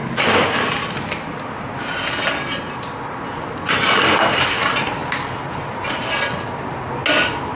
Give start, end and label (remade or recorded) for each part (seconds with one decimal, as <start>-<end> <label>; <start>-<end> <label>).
0.0-4.5 recorded; 4.5-5.0 remade; 5.0-7.5 recorded